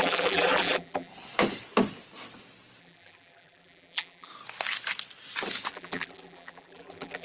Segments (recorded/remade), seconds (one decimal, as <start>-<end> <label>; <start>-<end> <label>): 0.0-1.1 remade; 1.1-2.8 recorded; 2.8-4.3 remade; 4.3-5.7 recorded; 5.7-7.2 remade